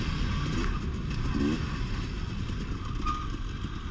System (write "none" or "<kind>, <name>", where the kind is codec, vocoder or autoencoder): none